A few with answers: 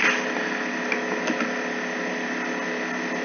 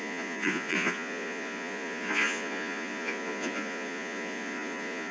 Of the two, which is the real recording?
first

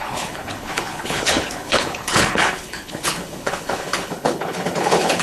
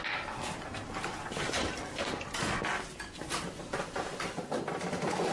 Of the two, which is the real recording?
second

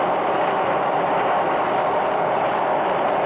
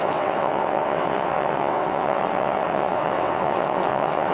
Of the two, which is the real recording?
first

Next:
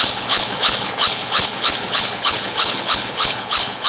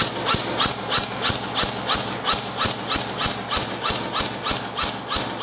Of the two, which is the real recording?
second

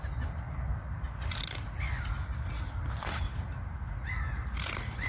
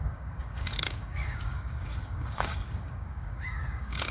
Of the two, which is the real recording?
first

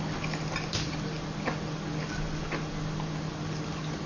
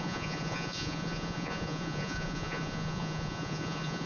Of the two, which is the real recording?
first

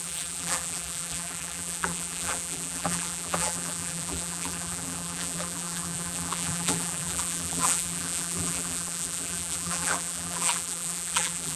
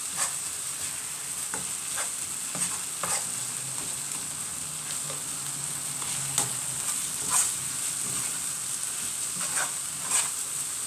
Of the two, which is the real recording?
second